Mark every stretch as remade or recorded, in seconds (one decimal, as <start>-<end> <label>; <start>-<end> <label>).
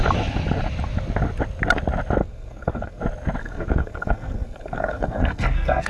0.0-2.2 recorded; 2.2-3.0 remade; 3.0-3.4 recorded; 3.4-5.9 remade